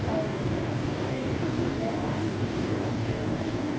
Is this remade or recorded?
remade